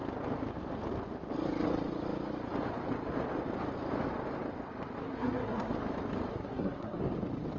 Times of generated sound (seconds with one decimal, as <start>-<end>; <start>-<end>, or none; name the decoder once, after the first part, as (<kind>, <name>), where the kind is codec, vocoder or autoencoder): 5.0-5.7 (codec, SNAC); 6.3-7.0